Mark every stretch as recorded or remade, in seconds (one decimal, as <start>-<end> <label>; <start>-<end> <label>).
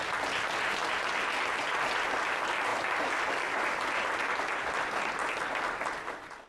0.0-6.5 recorded